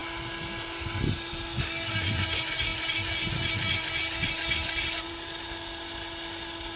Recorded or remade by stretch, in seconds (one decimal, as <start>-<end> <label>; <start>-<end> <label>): 0.0-6.8 recorded